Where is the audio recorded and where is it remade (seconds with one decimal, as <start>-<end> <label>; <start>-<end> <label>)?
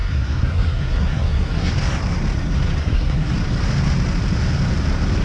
0.0-1.7 remade; 1.7-2.8 recorded; 2.8-3.3 remade; 3.3-5.2 recorded